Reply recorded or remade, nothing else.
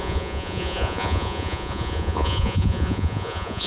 remade